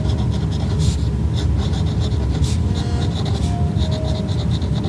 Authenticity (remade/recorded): recorded